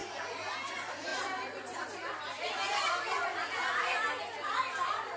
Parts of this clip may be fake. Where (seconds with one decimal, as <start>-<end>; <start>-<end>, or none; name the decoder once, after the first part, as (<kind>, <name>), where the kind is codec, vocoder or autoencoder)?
none

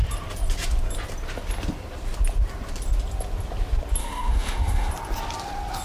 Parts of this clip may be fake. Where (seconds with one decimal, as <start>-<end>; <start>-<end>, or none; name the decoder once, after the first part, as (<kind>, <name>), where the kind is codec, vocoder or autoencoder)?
4.0-4.9 (autoencoder, DAC-VAE)

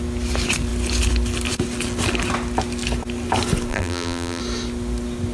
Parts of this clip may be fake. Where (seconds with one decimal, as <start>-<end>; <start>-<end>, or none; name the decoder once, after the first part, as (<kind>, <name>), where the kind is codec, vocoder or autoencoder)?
3.7-4.4 (vocoder, BigVGAN v2)

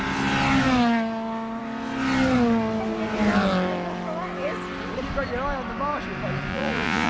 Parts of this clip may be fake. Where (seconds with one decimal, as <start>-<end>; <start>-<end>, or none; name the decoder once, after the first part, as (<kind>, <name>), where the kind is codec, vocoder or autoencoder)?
6.5-7.1 (vocoder, Vocos)

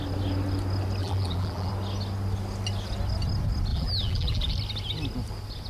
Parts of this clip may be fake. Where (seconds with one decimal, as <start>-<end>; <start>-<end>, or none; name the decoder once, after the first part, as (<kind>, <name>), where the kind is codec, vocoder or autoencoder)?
1.0-1.7 (vocoder, BigVGAN v2); 3.7-4.5

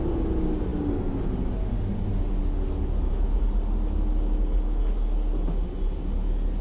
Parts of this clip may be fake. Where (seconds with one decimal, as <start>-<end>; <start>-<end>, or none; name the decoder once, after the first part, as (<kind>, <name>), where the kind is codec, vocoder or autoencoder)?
none

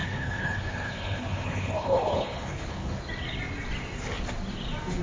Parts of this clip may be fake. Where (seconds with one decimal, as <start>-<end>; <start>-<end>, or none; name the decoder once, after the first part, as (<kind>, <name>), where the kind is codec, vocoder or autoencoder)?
0.0-3.0 (codec, HILCodec)

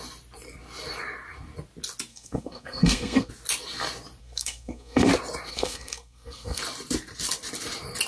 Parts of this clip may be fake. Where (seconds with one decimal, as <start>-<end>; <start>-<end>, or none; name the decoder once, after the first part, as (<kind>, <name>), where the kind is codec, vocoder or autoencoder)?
2.1-3.3 (codec, SNAC); 4.2-5.1; 5.5-6.6